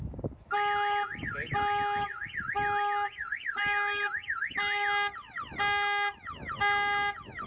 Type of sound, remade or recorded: recorded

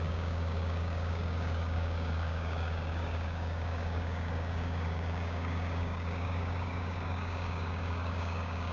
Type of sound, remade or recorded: remade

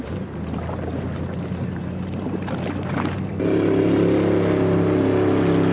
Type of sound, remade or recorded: recorded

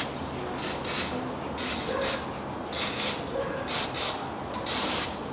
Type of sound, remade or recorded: recorded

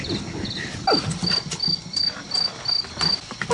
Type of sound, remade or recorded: recorded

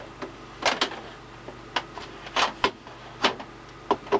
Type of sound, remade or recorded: recorded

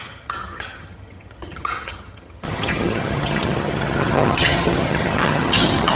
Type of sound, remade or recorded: remade